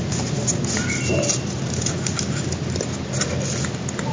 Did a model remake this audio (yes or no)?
no